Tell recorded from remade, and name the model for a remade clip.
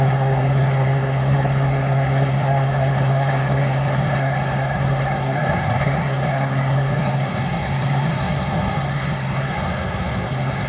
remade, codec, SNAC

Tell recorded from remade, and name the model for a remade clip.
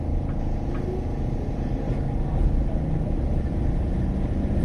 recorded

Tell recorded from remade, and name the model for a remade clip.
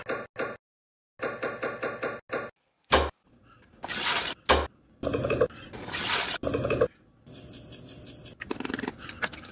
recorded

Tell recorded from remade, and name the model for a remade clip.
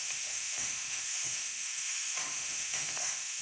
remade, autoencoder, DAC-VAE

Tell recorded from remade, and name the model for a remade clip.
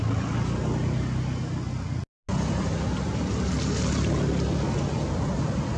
recorded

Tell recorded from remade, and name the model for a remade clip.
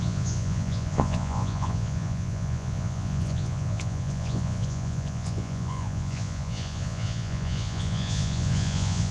remade, vocoder, Vocos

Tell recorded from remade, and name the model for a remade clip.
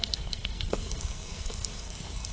remade, codec, SNAC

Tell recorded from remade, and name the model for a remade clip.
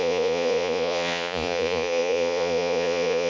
remade, vocoder, Vocos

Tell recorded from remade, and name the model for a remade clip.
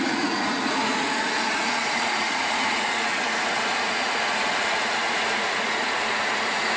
remade, vocoder, Vocos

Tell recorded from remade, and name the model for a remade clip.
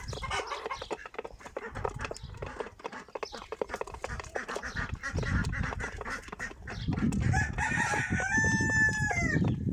recorded